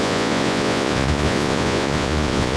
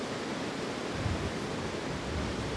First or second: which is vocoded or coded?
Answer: first